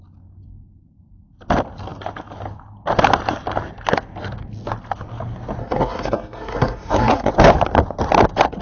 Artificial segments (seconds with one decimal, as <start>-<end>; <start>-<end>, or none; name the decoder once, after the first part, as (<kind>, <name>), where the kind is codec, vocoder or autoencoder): 5.6-7.3 (codec, SNAC)